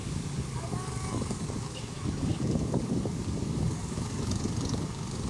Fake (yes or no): yes